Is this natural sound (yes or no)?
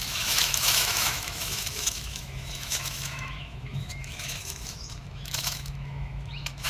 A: no